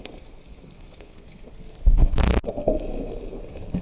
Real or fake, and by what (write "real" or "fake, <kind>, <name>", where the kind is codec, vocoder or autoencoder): fake, codec, SNAC